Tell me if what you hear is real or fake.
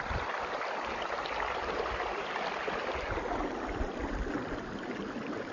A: real